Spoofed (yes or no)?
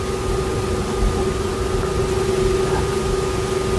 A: no